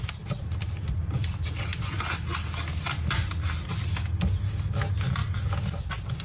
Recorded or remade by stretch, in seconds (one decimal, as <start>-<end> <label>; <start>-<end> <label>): 0.0-6.2 recorded